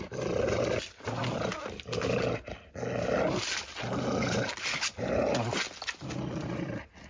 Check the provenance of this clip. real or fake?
real